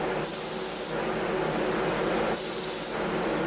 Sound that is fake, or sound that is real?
real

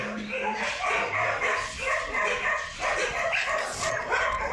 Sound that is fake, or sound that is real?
real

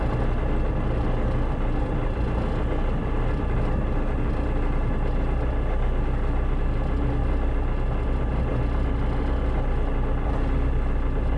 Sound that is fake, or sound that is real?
real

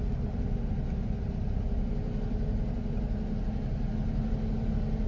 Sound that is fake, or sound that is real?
real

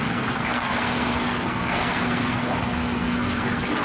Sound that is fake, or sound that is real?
fake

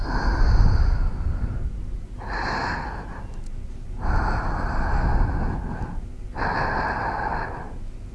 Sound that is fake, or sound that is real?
real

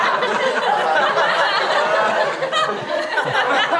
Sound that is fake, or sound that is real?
real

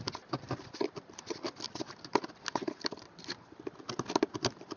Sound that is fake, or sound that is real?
real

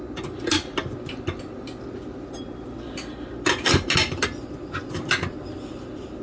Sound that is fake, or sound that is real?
real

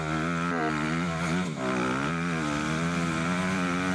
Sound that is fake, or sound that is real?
real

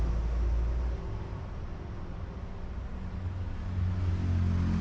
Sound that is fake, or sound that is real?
real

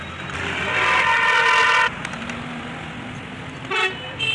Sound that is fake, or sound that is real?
real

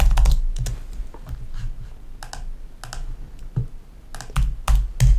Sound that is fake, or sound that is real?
real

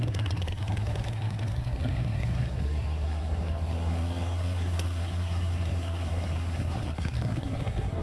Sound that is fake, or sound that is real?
fake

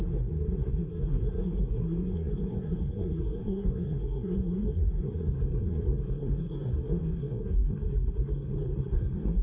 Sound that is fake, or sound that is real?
fake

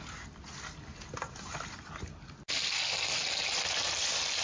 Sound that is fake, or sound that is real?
real